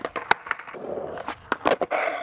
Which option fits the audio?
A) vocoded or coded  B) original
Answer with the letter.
B